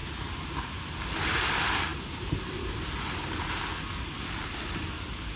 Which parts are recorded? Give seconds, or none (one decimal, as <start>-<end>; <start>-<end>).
0.0-5.4